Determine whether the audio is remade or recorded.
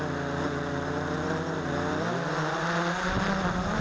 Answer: recorded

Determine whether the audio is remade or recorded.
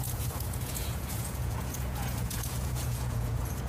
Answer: remade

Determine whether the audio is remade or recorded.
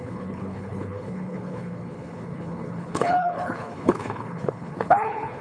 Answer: remade